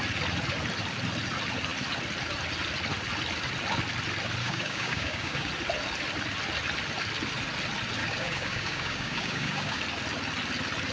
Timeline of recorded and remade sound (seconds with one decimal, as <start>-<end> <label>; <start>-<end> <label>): 0.0-4.4 recorded; 4.4-5.5 remade; 5.5-8.0 recorded; 8.0-9.8 remade; 9.8-10.9 recorded